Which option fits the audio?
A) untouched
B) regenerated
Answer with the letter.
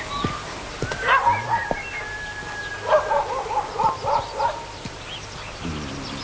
A